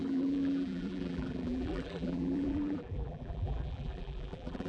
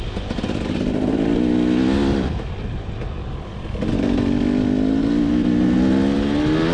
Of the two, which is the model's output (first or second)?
first